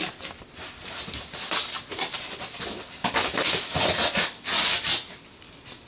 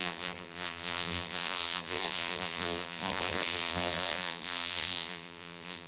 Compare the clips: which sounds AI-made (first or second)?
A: second